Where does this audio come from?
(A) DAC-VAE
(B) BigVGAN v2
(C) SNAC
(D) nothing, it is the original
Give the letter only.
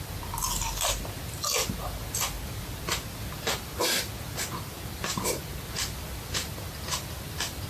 D